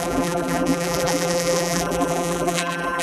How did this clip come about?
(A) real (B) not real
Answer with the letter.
B